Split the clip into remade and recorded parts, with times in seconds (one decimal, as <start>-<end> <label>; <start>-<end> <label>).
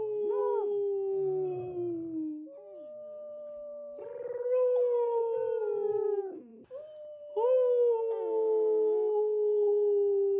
0.0-10.4 recorded